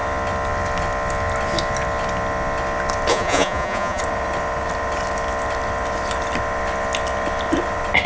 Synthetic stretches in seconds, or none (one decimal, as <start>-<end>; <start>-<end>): 3.1-4.0